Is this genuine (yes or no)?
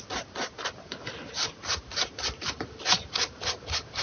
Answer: no